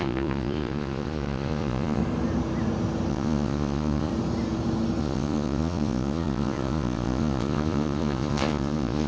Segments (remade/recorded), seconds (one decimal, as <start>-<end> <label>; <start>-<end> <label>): 0.0-2.0 remade; 2.0-3.1 recorded; 3.1-4.1 remade; 4.1-5.0 recorded; 5.0-9.1 remade